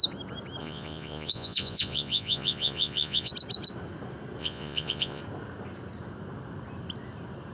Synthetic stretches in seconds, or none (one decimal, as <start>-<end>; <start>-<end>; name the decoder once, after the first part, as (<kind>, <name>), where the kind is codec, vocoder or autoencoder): 0.6-3.3 (vocoder, Vocos); 4.4-5.2